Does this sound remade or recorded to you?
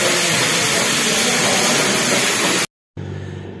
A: recorded